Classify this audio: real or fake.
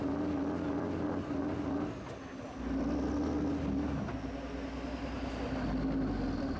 real